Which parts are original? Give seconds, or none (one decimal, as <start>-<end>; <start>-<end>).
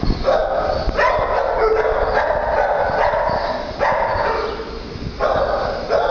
0.0-6.1